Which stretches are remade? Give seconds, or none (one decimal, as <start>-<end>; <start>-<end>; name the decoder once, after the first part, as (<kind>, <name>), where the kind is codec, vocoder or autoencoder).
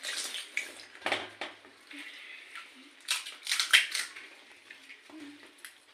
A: none